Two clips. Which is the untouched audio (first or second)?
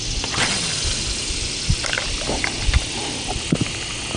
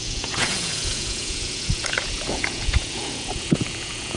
first